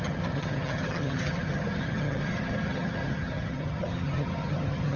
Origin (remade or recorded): remade